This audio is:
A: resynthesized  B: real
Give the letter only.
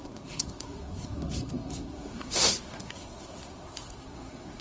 A